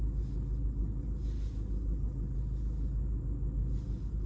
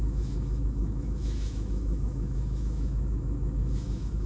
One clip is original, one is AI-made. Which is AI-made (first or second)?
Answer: second